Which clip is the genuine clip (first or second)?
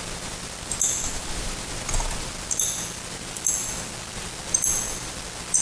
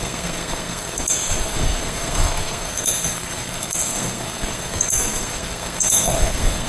first